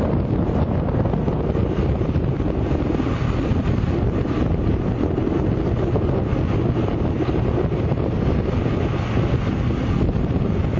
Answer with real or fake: real